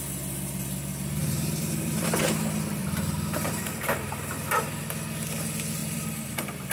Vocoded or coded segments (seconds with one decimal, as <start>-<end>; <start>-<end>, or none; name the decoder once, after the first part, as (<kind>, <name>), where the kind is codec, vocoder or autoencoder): 1.2-2.2 (vocoder, BigVGAN v2); 2.8-4.8; 5.8-6.7